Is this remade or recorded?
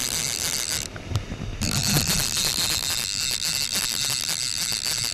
recorded